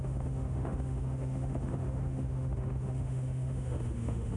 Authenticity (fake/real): fake